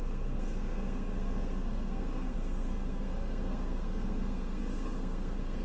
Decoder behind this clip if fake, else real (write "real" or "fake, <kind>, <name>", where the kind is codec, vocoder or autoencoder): fake, codec, SNAC